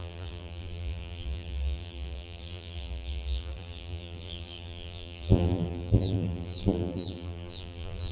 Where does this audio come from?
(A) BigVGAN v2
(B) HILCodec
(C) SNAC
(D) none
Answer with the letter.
A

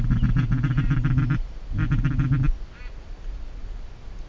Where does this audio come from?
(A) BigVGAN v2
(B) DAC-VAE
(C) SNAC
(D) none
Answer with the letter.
D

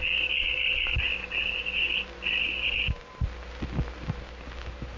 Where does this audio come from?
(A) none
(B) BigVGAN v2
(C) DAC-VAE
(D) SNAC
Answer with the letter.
A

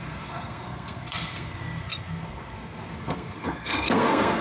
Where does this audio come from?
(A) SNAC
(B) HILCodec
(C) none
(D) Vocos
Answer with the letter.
A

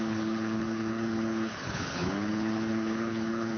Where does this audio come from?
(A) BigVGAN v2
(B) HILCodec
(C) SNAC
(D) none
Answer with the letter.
B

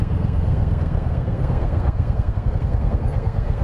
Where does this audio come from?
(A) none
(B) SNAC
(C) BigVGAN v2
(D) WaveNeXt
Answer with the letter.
B